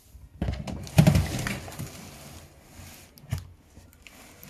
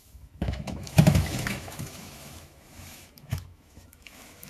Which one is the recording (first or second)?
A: first